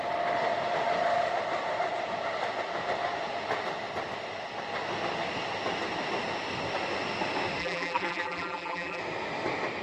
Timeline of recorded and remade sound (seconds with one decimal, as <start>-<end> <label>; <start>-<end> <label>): 0.0-7.6 recorded; 7.6-9.0 remade; 9.0-9.8 recorded